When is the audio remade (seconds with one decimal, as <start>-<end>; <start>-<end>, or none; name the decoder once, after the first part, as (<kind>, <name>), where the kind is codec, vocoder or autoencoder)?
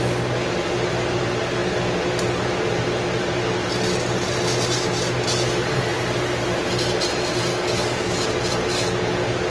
7.5-8.1 (codec, DAC)